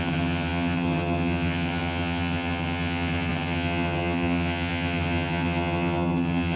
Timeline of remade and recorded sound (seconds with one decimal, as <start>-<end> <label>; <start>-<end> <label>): 0.0-6.6 remade